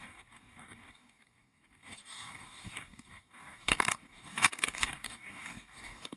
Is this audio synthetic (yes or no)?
yes